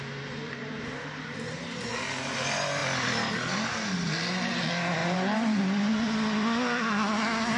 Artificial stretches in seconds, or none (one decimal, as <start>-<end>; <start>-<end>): 0.6-1.9; 5.0-5.6